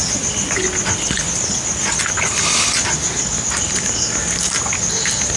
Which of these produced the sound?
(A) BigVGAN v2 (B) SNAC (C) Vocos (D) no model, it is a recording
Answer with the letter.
D